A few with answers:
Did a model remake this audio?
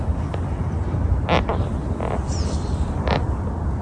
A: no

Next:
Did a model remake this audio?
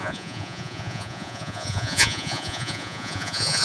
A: yes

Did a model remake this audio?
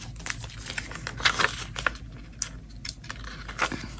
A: no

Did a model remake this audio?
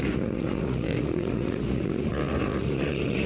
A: yes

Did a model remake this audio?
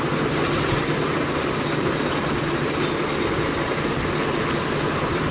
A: no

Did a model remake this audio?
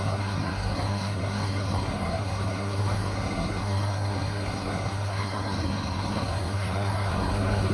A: yes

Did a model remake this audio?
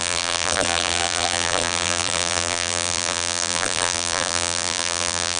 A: yes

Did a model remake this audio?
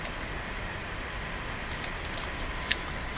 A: yes